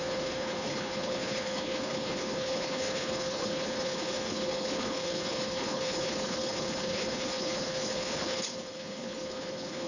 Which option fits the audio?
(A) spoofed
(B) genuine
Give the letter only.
A